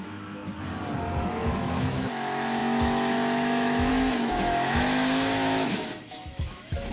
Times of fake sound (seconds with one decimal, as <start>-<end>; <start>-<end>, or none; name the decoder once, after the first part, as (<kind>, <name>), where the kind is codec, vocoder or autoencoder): 0.0-0.4 (autoencoder, DAC-VAE); 1.4-6.9